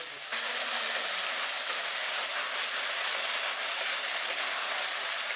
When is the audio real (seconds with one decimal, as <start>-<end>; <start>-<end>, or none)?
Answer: 0.0-5.4

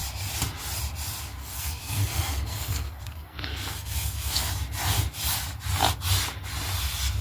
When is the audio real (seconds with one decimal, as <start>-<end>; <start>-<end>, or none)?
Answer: 0.0-1.4; 4.5-7.2

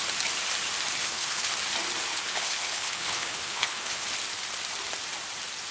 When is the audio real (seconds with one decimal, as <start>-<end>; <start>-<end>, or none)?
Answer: 0.0-1.0; 1.5-2.1; 4.0-5.7

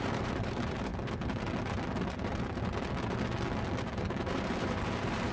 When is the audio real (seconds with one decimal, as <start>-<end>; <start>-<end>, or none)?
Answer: 0.9-3.8

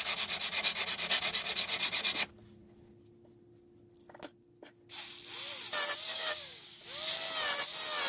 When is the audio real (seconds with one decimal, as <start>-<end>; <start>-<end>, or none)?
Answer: 0.0-6.1; 6.8-8.1